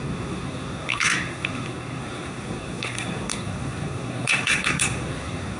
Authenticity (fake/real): fake